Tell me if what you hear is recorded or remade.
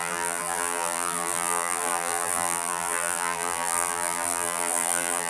remade